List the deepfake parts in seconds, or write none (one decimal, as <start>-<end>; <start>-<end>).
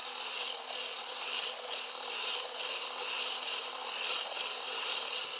0.9-1.7; 3.8-4.4